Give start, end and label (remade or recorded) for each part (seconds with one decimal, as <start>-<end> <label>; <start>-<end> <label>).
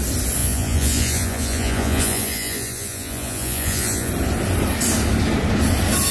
0.0-0.4 recorded; 0.4-4.1 remade; 4.1-6.1 recorded